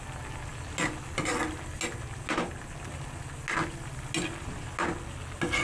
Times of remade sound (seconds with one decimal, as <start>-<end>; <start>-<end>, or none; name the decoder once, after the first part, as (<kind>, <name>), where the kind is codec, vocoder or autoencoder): none